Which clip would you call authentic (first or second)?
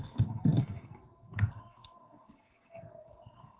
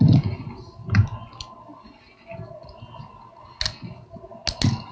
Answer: second